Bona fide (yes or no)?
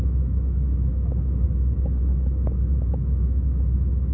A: no